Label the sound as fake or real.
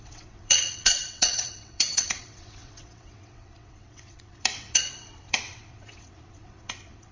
fake